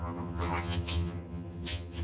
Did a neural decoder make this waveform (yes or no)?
yes